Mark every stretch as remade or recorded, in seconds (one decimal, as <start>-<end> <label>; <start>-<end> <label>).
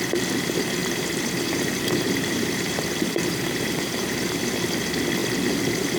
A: 0.0-0.8 recorded; 0.8-4.4 remade; 4.4-6.0 recorded